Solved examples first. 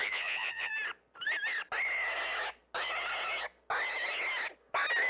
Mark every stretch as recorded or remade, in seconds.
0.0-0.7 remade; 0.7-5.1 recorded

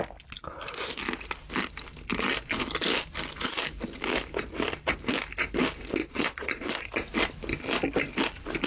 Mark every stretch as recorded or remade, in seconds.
0.0-6.0 recorded; 6.0-6.7 remade; 6.7-8.7 recorded